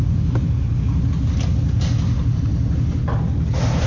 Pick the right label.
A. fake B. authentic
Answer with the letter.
B